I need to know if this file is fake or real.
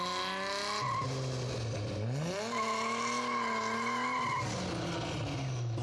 real